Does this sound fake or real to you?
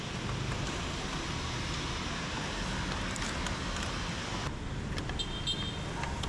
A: real